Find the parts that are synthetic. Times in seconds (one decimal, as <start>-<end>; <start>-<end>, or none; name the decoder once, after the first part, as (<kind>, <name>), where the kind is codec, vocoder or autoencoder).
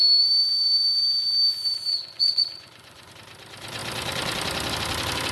1.9-3.1 (vocoder, Vocos)